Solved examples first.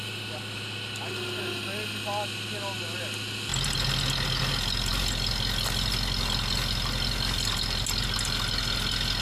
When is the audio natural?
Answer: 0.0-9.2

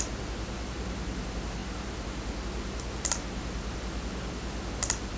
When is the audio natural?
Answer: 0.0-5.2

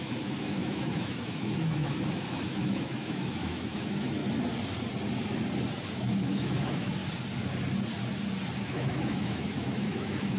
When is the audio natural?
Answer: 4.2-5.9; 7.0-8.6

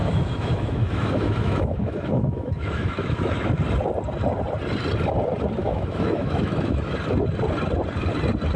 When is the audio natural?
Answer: 3.5-5.6; 6.9-8.6

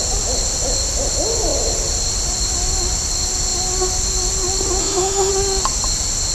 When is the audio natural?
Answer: 0.0-4.8; 5.3-6.3

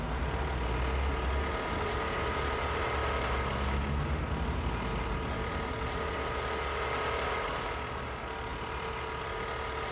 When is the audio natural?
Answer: 0.0-9.9